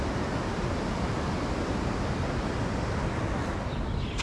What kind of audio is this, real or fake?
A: real